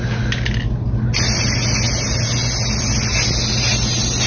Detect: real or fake real